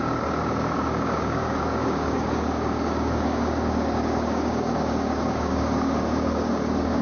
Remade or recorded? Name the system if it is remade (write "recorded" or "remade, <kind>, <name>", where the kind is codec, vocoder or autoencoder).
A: remade, codec, DAC